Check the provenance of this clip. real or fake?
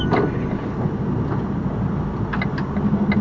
real